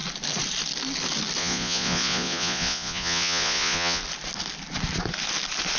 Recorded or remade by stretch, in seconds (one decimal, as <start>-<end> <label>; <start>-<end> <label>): 0.0-1.4 recorded; 1.4-4.0 remade; 4.0-5.8 recorded